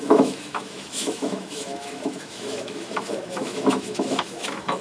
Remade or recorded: remade